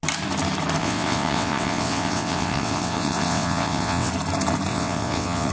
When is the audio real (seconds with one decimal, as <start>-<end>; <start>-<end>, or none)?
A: 0.0-0.8; 4.1-4.7